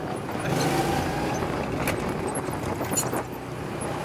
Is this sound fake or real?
real